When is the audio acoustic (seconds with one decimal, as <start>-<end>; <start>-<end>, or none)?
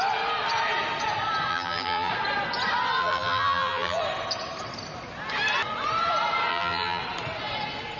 0.0-1.5; 2.1-3.0; 4.0-6.5; 7.0-8.0